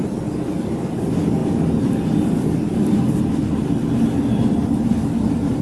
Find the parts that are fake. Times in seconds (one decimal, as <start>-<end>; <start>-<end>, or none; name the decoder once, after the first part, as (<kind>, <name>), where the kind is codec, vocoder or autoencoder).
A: 0.0-1.4 (vocoder, BigVGAN v2); 2.1-3.4; 4.9-5.6